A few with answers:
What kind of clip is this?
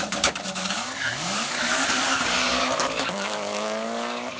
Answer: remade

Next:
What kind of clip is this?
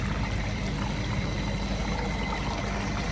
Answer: recorded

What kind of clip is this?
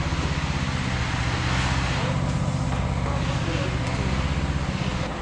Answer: recorded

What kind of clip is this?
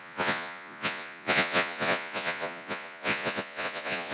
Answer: remade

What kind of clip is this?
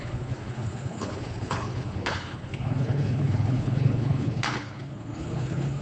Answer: remade